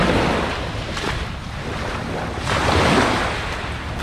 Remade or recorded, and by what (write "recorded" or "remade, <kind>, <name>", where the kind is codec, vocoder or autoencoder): recorded